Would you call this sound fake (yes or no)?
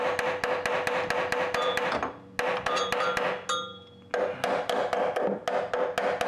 no